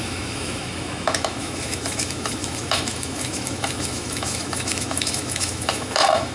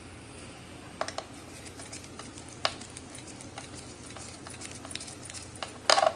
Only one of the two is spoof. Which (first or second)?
first